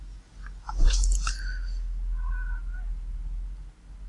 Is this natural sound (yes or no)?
yes